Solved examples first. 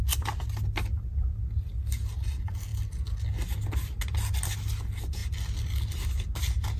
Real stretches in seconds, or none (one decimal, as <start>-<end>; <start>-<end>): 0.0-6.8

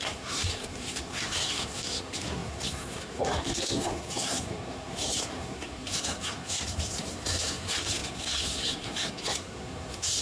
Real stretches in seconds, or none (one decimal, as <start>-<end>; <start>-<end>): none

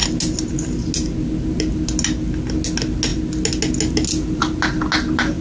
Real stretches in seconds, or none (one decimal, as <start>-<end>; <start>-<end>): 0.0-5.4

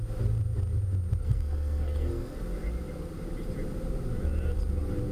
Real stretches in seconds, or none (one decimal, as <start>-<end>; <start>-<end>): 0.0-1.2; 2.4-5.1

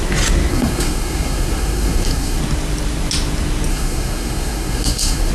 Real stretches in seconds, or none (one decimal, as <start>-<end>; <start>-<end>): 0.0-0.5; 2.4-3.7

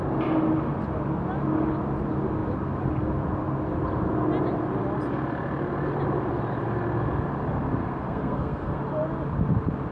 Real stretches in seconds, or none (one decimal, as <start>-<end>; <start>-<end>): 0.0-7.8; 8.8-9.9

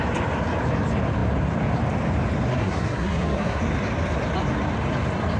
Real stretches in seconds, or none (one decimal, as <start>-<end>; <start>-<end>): 0.0-2.5; 3.6-5.4

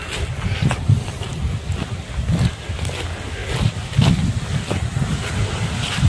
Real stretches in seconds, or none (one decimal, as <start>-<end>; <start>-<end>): 0.0-6.1